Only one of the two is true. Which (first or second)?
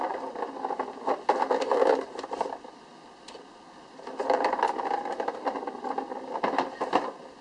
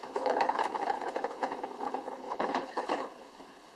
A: first